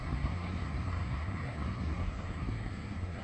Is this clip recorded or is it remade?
remade